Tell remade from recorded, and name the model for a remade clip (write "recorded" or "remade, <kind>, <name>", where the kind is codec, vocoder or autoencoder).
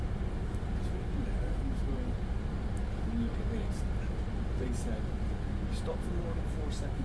recorded